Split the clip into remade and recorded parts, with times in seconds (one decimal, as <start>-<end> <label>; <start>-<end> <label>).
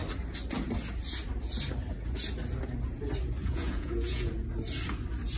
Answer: 0.0-3.4 recorded; 3.4-4.3 remade; 4.3-5.4 recorded